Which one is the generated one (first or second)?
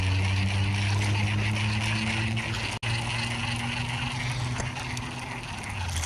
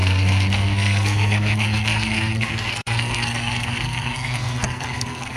second